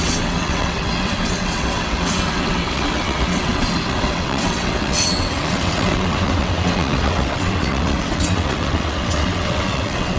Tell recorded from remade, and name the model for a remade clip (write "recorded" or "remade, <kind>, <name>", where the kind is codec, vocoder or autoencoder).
remade, vocoder, WaveNeXt